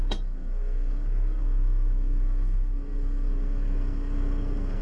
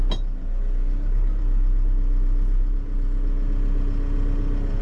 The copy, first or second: first